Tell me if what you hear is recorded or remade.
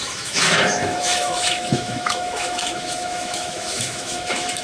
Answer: remade